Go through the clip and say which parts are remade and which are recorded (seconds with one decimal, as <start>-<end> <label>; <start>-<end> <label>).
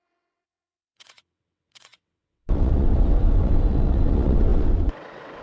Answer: 0.0-5.4 remade